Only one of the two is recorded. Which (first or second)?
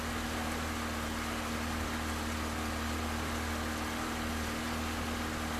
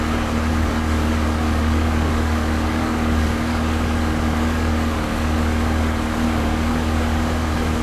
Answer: first